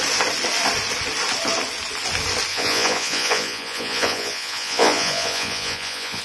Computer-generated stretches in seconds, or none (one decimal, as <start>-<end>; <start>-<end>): 2.5-6.2